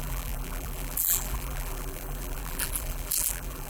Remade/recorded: remade